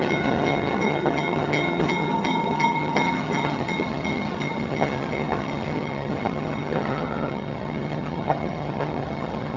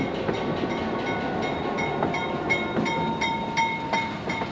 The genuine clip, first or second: second